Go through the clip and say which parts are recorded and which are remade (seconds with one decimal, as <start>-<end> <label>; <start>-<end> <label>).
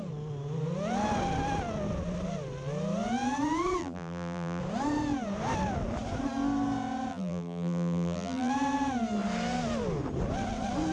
0.0-3.8 recorded; 3.8-4.6 remade; 4.6-7.1 recorded; 7.1-8.5 remade; 8.5-10.9 recorded